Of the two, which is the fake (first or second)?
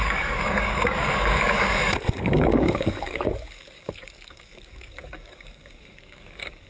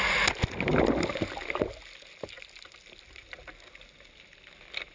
first